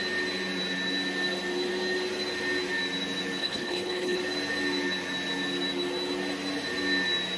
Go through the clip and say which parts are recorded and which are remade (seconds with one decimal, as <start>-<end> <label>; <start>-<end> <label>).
0.0-3.4 recorded; 3.4-4.2 remade; 4.2-7.4 recorded